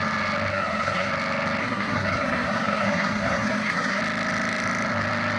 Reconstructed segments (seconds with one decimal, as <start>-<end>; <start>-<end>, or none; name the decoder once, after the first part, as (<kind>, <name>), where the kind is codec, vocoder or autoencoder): 0.5-1.1 (codec, SNAC); 1.6-4.0